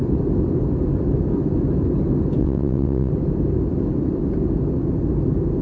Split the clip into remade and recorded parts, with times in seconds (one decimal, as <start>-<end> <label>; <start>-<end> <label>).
0.0-2.4 recorded; 2.4-3.1 remade; 3.1-5.6 recorded